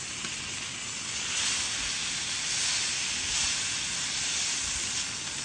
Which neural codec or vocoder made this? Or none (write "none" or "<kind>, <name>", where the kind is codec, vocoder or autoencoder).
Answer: none